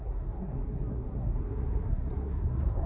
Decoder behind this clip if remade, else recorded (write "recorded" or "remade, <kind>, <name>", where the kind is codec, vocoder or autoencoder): remade, codec, SNAC